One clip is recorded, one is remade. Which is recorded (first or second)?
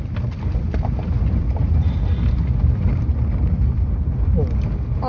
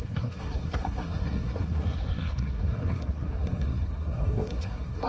first